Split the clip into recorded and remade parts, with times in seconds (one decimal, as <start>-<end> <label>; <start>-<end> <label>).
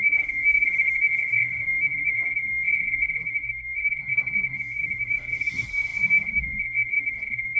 0.0-7.6 remade